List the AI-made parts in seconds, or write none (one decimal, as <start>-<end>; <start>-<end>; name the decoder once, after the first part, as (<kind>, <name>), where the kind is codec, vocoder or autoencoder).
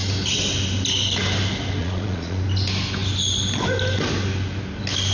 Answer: 1.8-2.4 (vocoder, Vocos)